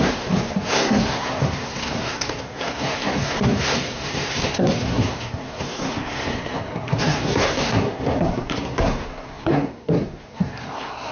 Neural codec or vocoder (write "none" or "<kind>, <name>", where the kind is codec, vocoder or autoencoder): codec, SNAC